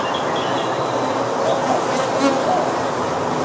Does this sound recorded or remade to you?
recorded